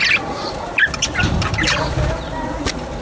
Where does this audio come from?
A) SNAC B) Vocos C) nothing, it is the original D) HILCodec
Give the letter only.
C